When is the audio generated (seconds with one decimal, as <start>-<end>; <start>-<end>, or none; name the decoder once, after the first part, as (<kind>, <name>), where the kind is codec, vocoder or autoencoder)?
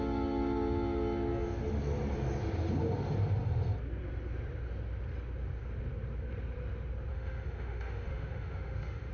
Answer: 7.1-9.1 (autoencoder, DAC-VAE)